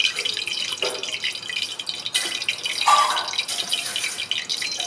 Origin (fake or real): real